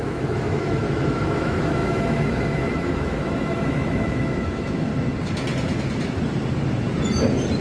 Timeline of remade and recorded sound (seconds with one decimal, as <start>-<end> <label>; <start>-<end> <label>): 0.0-4.9 remade; 4.9-7.6 recorded